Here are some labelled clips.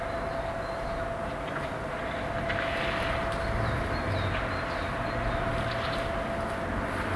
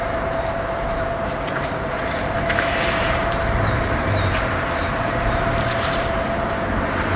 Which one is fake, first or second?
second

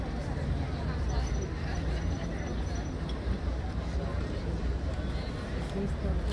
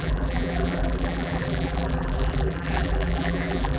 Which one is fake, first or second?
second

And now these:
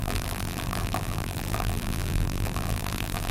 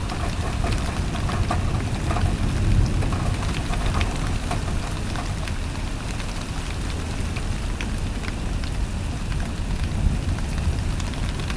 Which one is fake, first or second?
first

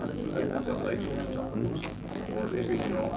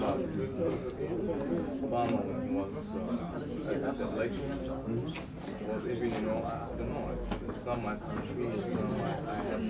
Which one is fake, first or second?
first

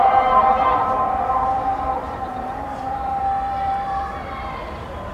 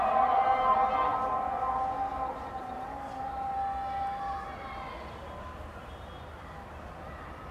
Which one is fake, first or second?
first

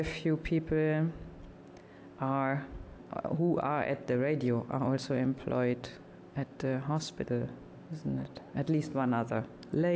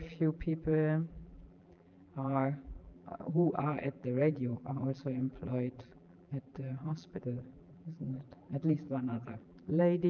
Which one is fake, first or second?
second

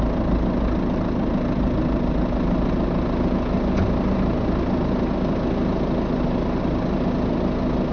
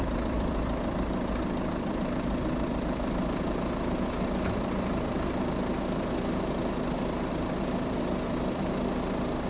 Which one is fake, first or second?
second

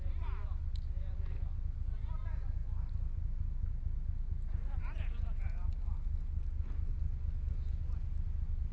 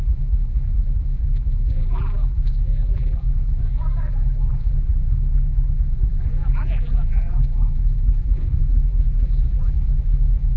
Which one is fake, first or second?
second